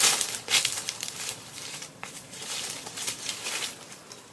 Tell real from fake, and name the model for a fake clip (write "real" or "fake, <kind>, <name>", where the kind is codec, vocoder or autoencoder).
fake, vocoder, BigVGAN v2